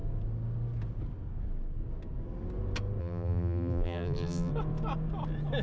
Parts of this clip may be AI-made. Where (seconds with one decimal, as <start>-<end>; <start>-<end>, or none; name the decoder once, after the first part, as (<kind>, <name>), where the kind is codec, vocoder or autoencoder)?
3.0-4.5 (vocoder, BigVGAN v2)